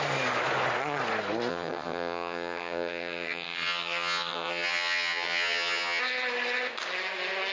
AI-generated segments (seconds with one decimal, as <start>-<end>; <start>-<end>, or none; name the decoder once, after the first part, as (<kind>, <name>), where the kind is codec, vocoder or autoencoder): 1.5-6.0 (vocoder, HiFi-GAN)

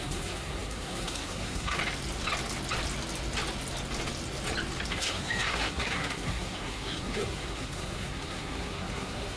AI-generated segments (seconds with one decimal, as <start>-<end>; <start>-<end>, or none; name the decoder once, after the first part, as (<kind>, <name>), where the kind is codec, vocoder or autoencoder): 0.0-1.8 (codec, SNAC); 4.9-9.4

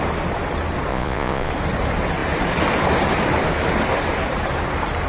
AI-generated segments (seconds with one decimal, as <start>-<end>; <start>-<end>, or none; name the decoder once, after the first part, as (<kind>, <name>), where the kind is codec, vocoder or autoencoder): 0.9-1.5 (vocoder, Vocos)

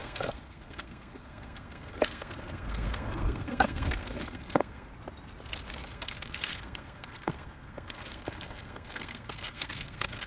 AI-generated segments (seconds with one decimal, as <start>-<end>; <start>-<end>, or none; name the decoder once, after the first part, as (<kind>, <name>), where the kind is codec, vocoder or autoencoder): 0.0-4.9 (codec, SNAC); 5.9-10.3